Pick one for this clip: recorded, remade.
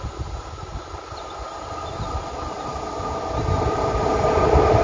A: recorded